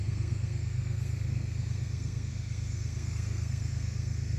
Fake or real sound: fake